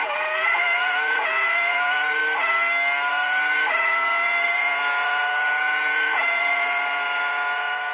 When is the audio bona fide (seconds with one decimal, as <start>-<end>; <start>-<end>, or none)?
2.2-3.1